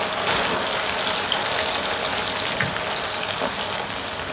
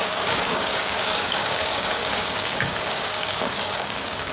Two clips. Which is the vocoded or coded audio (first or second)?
second